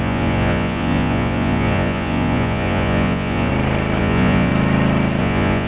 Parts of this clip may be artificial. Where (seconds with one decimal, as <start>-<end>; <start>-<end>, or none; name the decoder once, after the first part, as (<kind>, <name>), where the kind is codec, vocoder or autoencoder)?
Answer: 0.0-3.5 (vocoder, Vocos); 4.0-4.5; 5.2-5.7